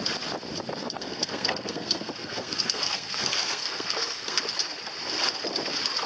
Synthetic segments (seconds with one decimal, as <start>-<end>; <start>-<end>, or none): 0.8-4.4